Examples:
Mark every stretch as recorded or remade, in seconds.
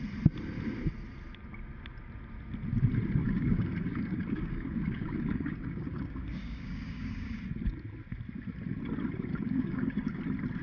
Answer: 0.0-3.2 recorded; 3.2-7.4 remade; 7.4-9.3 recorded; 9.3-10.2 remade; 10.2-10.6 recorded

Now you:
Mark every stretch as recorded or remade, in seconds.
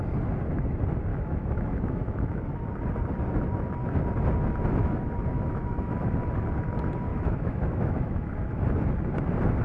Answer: 0.0-1.1 recorded; 1.1-2.4 remade; 2.4-4.8 recorded; 4.8-6.1 remade; 6.1-7.1 recorded; 7.1-8.6 remade; 8.6-9.6 recorded